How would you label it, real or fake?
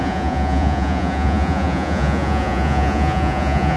fake